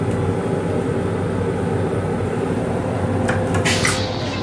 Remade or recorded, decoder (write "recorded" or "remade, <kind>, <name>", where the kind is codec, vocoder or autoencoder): recorded